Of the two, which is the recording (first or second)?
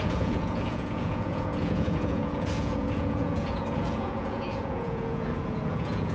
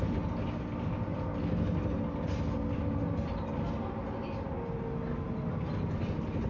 second